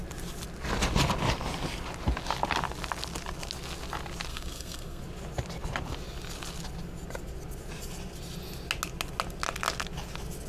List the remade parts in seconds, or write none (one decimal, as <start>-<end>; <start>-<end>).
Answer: 4.3-5.0